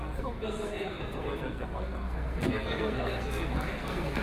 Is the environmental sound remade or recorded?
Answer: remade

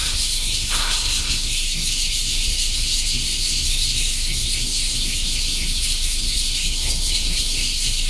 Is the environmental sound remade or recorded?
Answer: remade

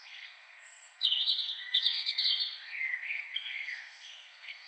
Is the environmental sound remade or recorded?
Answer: remade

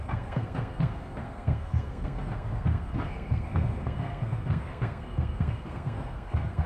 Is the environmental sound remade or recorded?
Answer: remade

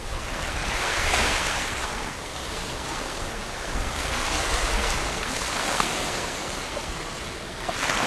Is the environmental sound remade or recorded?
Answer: remade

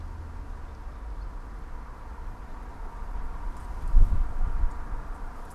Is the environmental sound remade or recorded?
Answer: recorded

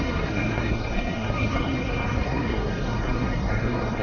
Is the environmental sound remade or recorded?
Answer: remade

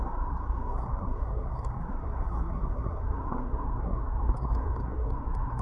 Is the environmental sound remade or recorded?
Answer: remade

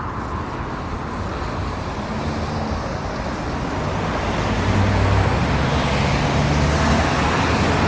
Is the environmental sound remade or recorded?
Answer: recorded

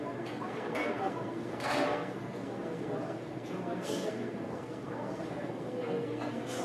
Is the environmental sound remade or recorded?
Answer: remade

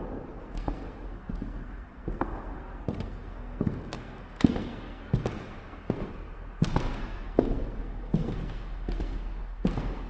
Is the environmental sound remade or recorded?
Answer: remade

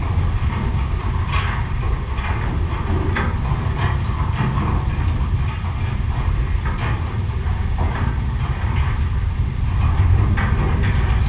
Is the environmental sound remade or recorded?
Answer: recorded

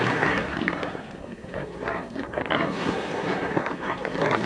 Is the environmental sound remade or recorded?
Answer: remade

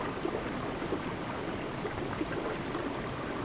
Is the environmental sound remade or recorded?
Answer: recorded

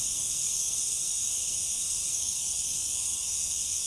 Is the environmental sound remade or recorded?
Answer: remade